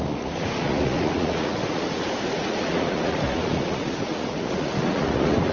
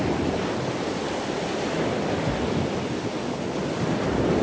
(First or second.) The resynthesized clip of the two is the first